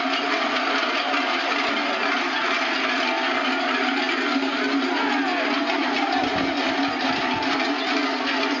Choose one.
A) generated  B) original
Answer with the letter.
B